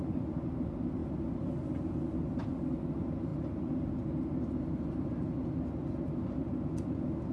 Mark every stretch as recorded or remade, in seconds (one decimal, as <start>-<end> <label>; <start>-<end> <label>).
0.0-7.3 recorded

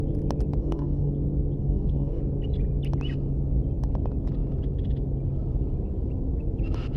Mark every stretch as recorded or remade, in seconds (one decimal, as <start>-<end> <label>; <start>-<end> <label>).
0.0-0.6 recorded; 0.6-1.1 remade; 1.1-1.6 recorded; 1.6-2.2 remade; 2.2-7.0 recorded

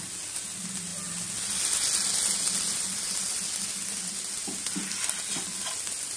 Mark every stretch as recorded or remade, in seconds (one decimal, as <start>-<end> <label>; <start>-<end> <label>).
0.0-6.2 recorded

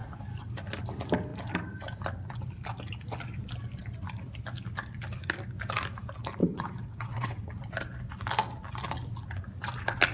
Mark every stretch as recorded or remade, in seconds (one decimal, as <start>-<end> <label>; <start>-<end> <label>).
0.0-6.4 recorded; 6.4-7.5 remade; 7.5-10.1 recorded

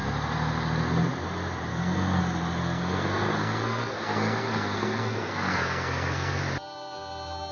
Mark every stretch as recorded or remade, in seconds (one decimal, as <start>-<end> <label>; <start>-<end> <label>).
0.0-1.7 recorded; 1.7-2.2 remade; 2.2-2.6 recorded; 2.6-6.4 remade; 6.4-7.5 recorded